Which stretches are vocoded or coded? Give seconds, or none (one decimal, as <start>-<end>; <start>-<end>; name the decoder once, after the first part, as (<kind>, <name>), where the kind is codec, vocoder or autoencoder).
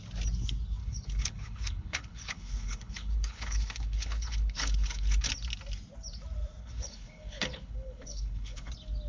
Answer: 0.8-5.3 (codec, HILCodec); 6.6-8.7